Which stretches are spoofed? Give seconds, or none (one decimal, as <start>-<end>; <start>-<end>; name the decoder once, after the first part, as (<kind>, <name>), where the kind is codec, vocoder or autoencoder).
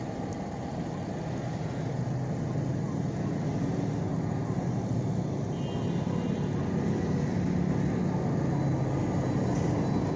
none